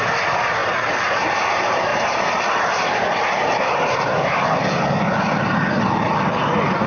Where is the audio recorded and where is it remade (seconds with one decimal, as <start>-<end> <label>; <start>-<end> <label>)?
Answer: 0.0-1.9 recorded; 1.9-2.4 remade; 2.4-6.9 recorded